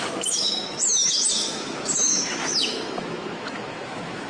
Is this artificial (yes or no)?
yes